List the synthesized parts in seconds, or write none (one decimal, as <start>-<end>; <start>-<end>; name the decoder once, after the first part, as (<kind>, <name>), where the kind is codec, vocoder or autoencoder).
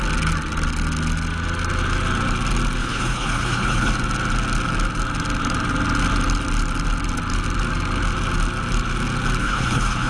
2.8-3.9 (codec, HILCodec); 9.4-10.1